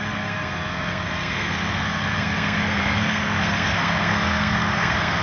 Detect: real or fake fake